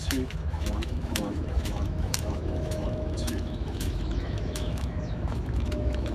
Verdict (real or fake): fake